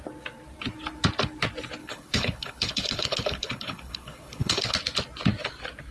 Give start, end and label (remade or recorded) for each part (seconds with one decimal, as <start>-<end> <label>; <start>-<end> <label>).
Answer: 0.0-1.8 recorded; 1.8-4.7 remade; 4.7-5.9 recorded